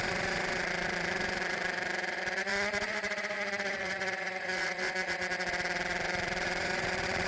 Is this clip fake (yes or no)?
yes